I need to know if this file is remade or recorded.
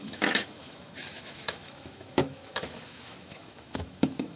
remade